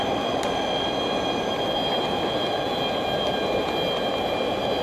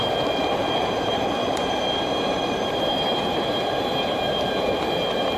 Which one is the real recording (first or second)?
first